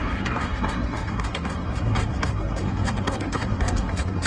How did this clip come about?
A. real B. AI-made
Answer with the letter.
B